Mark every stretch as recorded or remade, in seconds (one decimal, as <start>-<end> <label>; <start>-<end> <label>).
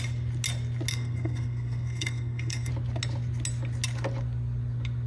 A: 0.0-0.9 recorded; 0.9-2.7 remade; 2.7-5.1 recorded